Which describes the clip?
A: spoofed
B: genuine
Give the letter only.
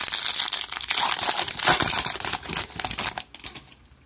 B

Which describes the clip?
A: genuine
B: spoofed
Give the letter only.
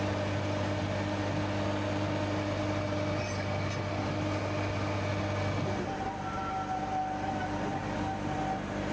A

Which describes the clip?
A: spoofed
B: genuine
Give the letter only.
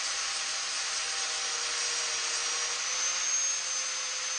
B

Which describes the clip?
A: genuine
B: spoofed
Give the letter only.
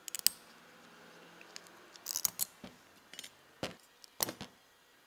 A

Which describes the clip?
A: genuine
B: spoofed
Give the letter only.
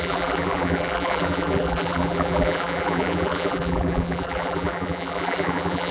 B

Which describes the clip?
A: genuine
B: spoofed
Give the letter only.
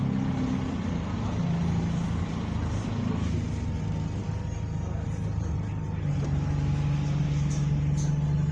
A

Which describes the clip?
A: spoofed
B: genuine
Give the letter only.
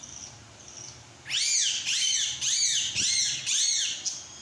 B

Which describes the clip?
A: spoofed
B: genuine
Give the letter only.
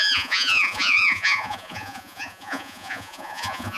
A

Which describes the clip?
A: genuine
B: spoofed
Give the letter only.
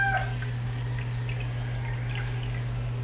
A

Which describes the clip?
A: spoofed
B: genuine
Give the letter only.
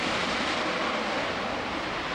B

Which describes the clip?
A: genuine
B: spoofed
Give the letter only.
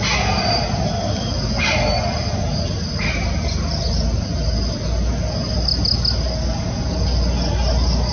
A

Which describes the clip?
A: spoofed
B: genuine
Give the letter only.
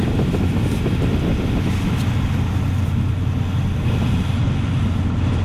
B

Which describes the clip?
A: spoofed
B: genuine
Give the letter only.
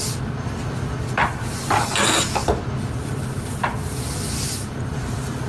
B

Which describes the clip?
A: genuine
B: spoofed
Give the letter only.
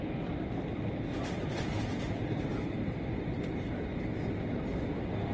A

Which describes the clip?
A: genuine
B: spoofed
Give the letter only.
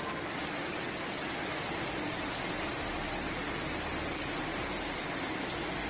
A